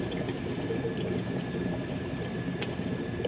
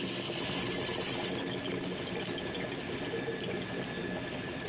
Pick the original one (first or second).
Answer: second